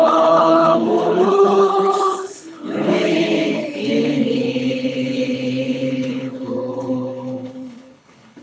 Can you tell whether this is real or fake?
fake